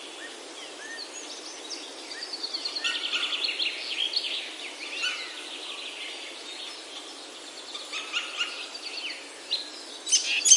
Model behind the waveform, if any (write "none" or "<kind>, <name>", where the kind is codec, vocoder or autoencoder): none